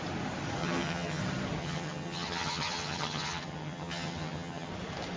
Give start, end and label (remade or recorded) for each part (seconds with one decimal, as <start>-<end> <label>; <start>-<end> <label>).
0.0-0.6 recorded; 0.6-1.2 remade; 1.2-1.6 recorded; 1.6-4.7 remade; 4.7-5.2 recorded

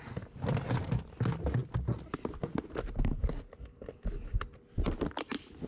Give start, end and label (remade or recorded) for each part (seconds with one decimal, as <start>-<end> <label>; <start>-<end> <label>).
0.0-5.7 recorded

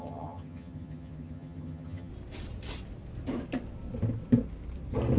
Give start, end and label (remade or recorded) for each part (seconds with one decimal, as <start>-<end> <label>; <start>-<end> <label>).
0.0-2.1 remade; 2.1-5.2 recorded

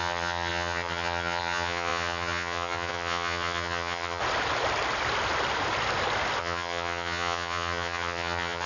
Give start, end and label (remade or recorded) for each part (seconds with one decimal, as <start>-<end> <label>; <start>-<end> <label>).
0.0-4.2 remade; 4.2-6.4 recorded; 6.4-8.7 remade

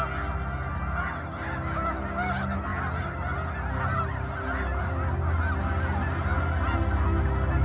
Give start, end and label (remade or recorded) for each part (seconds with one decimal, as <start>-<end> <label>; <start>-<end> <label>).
0.0-7.6 recorded